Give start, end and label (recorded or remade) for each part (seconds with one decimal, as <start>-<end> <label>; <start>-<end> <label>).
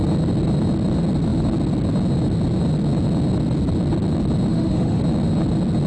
0.0-4.5 recorded; 4.5-5.0 remade; 5.0-5.9 recorded